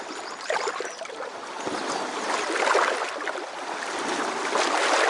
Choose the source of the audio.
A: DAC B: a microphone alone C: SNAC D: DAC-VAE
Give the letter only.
B